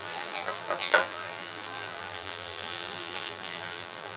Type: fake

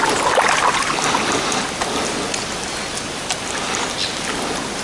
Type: real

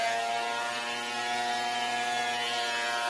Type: real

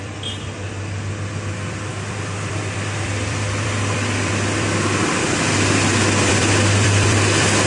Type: fake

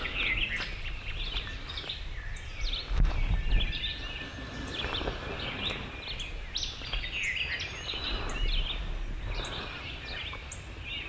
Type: real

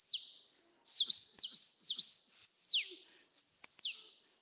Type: real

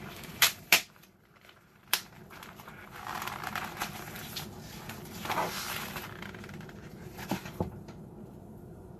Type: fake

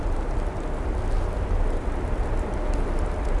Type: real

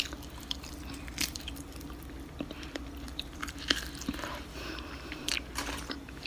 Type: fake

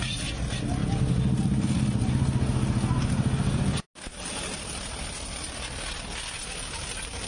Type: real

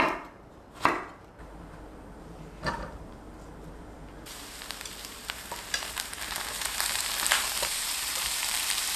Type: fake